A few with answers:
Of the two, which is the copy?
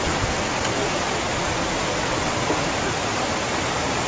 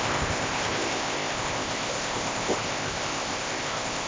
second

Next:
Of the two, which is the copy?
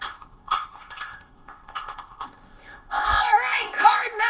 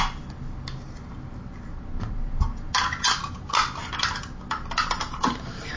first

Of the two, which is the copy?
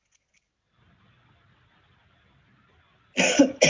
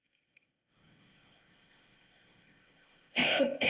second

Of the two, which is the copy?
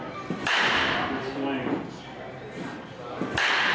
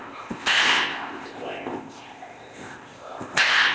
second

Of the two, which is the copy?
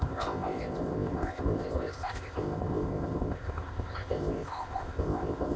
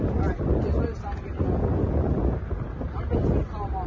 first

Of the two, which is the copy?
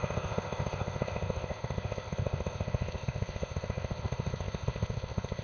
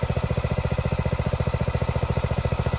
first